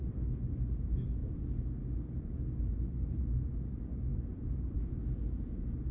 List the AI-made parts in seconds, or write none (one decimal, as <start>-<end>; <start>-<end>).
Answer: 4.1-4.9